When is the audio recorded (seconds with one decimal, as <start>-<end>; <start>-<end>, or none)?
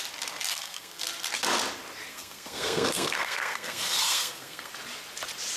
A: 0.0-0.5; 1.0-2.1; 4.7-5.6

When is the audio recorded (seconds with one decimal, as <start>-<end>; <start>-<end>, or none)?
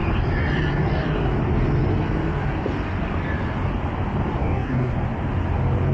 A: 0.0-4.4; 4.9-5.9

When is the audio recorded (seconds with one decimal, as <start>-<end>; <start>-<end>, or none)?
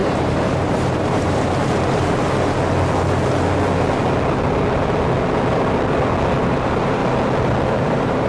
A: 1.6-6.4; 7.0-7.7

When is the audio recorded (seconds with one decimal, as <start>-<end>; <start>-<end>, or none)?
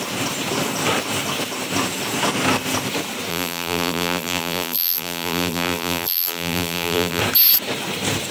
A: 0.0-3.3; 7.2-8.3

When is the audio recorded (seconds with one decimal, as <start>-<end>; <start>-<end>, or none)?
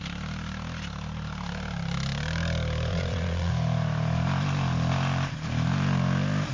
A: 0.0-2.9; 3.5-6.5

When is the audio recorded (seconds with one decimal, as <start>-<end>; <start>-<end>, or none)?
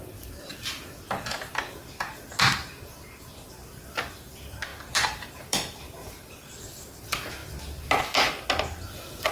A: 0.0-4.7; 6.6-9.3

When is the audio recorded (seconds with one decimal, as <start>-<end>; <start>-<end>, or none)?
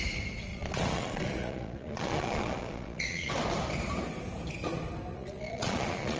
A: 0.0-0.5; 3.3-5.1